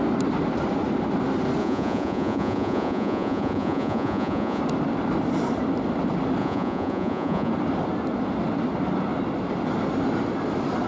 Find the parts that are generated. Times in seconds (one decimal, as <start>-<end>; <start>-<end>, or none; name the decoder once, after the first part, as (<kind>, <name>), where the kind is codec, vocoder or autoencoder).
1.6-4.6 (vocoder, Vocos); 6.4-7.5